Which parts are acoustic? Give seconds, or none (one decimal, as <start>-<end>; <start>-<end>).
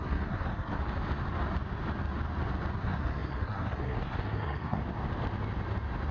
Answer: 0.8-2.8; 4.8-6.1